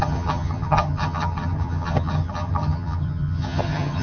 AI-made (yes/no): yes